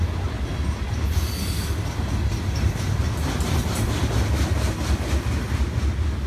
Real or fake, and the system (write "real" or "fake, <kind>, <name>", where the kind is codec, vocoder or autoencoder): real